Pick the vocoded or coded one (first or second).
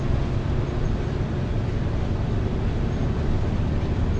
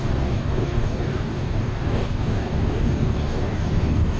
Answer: second